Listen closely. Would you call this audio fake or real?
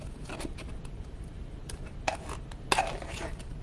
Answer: real